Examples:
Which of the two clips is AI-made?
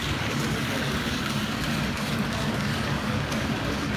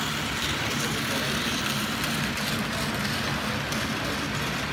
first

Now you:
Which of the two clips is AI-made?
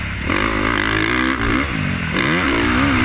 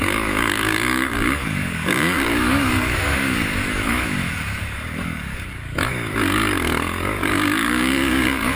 second